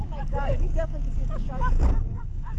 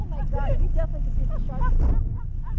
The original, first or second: second